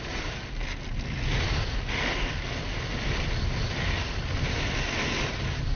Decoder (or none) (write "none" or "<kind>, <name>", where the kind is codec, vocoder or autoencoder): none